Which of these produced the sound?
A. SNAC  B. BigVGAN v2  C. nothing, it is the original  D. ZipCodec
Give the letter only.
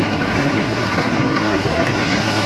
A